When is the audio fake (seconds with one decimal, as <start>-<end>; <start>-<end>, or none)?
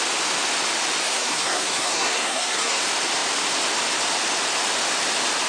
1.0-2.8